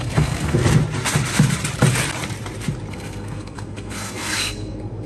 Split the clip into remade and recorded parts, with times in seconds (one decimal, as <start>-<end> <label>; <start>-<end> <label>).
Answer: 0.0-0.6 remade; 0.6-2.9 recorded; 2.9-5.1 remade